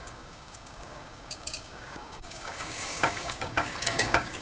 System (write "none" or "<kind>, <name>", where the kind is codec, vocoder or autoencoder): codec, DAC